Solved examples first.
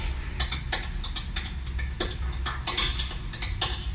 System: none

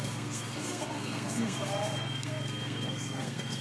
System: codec, SNAC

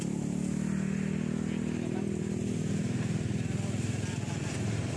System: none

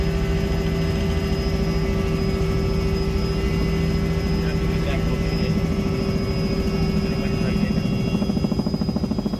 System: none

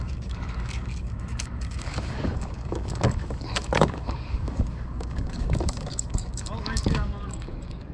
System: codec, DAC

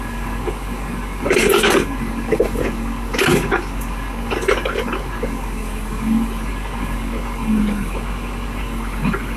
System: codec, DAC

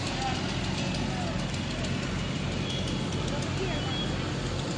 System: none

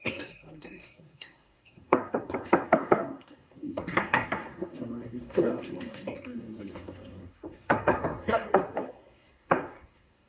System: codec, SNAC